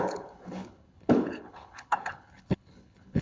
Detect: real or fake fake